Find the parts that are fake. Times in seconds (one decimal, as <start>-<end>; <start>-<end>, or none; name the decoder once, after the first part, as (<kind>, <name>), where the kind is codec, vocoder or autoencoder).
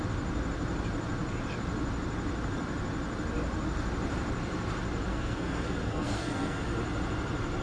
5.1-6.6 (codec, SNAC)